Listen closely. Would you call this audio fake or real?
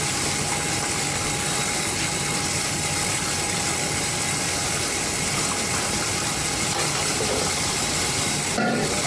real